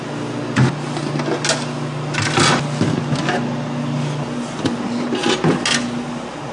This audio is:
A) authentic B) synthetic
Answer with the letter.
A